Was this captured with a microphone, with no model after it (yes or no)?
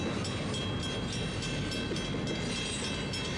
yes